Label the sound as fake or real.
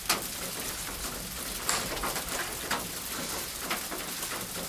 real